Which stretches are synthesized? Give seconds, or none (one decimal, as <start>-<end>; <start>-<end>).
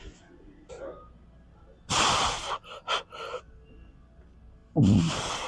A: none